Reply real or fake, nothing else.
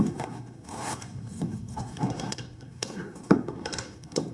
fake